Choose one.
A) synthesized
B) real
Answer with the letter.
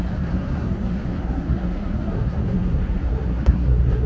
A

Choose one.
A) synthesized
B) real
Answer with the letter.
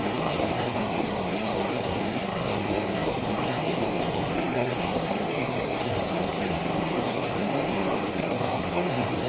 A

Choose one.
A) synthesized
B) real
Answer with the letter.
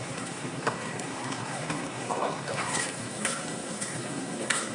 A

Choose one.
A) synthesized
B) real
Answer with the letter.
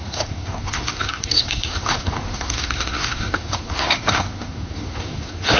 A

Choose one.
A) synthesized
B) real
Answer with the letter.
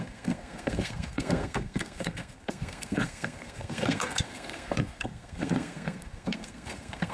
A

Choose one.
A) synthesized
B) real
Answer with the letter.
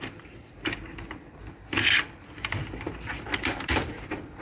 B